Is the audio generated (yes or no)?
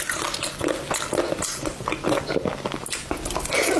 no